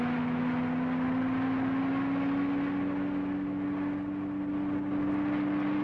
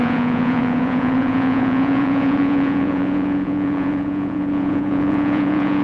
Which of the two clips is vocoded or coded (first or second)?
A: second